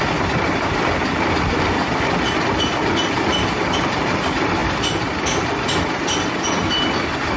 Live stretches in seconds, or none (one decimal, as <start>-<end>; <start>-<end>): 0.0-7.4